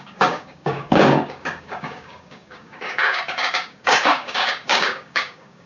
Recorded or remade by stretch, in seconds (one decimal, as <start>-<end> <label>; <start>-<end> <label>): 0.0-5.7 remade